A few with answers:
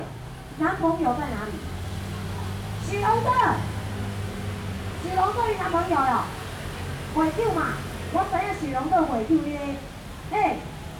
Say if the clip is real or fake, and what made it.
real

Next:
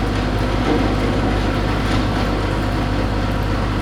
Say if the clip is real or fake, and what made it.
real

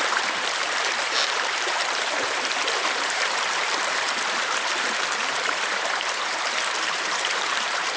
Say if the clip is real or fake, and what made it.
fake, vocoder, BigVGAN v2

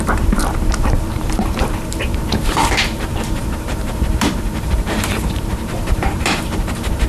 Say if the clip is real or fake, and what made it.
fake, vocoder, BigVGAN v2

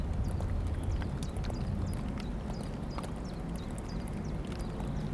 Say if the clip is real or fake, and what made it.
real